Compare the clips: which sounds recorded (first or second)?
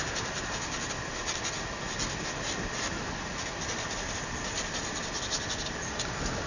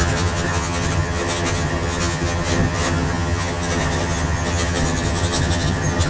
first